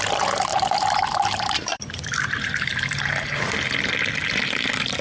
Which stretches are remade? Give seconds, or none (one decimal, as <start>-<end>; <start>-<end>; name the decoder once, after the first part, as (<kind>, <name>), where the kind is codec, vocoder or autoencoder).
0.5-3.5 (vocoder, BigVGAN v2)